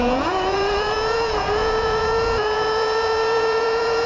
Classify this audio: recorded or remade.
remade